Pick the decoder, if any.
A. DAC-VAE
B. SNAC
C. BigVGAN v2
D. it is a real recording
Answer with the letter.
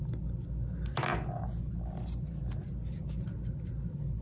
D